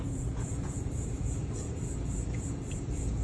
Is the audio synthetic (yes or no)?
yes